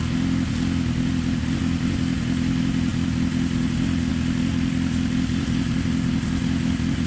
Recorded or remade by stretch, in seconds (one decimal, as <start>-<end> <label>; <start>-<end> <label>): 0.0-7.1 recorded